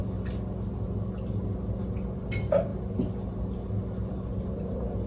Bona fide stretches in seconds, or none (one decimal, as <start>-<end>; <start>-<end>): 0.0-5.1